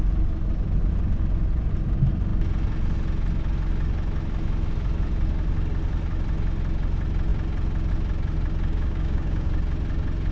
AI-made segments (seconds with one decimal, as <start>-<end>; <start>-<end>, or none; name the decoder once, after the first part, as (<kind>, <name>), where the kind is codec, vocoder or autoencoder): 8.7-9.5 (codec, DAC)